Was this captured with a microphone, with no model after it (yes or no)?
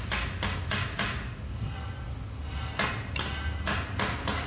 yes